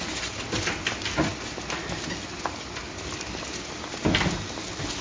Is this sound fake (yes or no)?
no